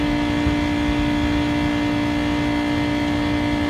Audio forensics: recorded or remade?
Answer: recorded